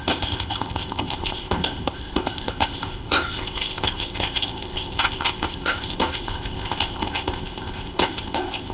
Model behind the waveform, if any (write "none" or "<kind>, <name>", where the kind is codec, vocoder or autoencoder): codec, ZipCodec